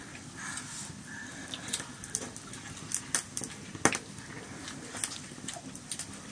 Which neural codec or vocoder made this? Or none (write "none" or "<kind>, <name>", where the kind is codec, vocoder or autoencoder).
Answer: none